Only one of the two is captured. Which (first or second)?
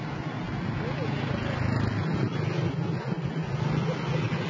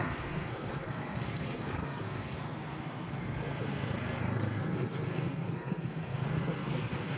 first